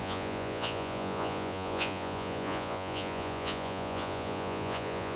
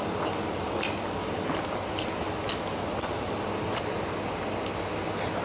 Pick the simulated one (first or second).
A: first